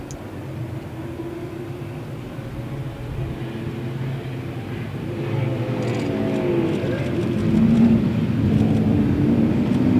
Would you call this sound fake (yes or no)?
no